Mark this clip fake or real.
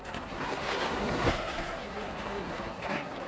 fake